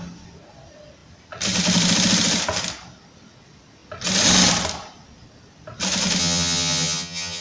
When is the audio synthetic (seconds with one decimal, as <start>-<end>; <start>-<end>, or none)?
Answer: 6.2-7.4